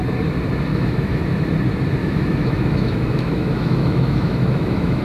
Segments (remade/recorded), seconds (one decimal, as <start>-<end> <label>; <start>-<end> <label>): 0.0-0.7 recorded; 0.7-1.2 remade; 1.2-2.0 recorded; 2.0-5.0 remade